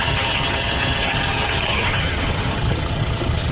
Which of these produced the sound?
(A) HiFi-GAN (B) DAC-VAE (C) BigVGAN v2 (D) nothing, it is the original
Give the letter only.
A